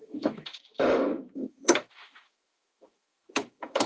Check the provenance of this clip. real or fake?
fake